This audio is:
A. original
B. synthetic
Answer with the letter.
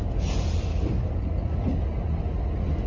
A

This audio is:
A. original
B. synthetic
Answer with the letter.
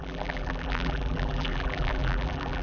B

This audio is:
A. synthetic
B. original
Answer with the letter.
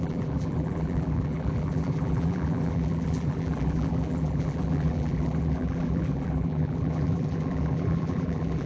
A